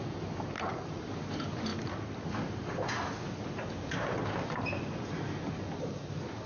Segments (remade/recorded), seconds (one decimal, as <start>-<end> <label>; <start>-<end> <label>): 0.0-6.5 recorded